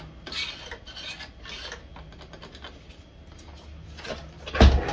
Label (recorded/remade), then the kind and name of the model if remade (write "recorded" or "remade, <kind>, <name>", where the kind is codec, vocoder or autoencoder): recorded